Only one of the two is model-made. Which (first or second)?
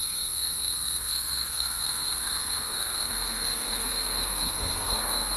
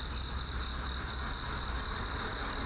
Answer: first